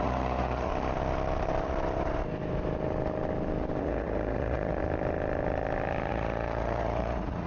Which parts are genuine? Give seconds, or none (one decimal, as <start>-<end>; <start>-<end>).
0.7-3.8; 4.8-6.1